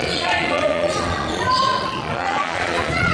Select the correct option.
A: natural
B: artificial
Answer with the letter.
B